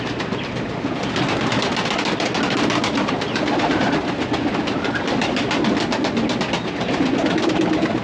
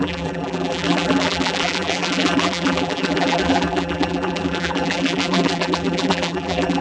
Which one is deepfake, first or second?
second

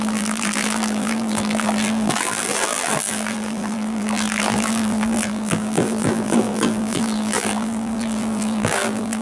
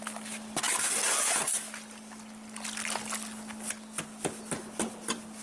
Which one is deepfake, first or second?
first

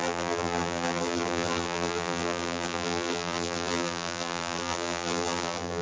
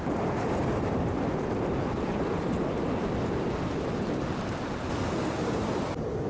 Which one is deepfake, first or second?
first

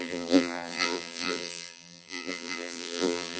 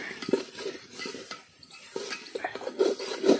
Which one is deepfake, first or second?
first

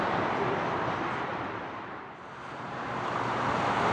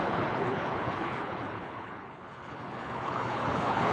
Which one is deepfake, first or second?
second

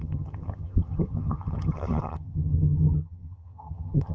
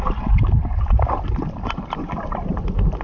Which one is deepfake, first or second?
first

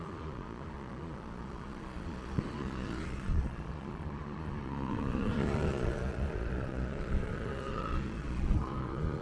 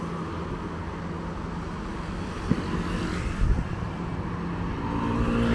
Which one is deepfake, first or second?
first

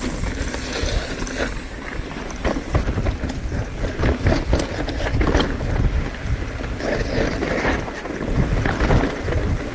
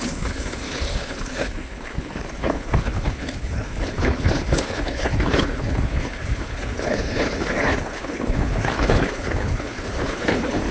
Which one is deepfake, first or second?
second